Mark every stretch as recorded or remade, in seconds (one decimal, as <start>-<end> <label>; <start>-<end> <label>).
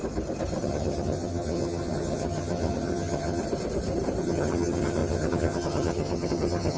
0.0-0.6 recorded; 0.6-3.4 remade; 3.4-4.2 recorded; 4.2-6.8 remade